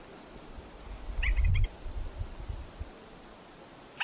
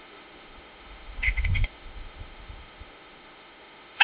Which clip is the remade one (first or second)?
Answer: second